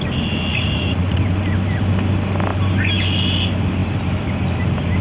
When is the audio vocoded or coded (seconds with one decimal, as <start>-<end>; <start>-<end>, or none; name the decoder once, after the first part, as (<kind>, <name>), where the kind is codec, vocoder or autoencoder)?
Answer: 0.5-1.2 (vocoder, Vocos)